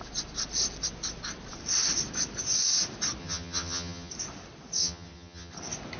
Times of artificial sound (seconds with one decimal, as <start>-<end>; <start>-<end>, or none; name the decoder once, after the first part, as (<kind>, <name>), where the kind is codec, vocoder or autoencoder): 3.2-4.1 (vocoder, HiFi-GAN); 4.8-5.5